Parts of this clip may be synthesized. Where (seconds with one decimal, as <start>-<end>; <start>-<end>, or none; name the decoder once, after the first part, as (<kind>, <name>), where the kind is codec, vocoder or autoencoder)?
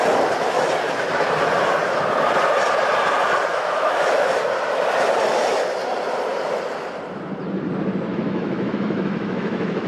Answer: 3.5-4.3 (autoencoder, DAC-VAE); 8.1-9.9